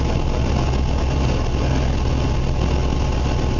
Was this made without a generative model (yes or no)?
yes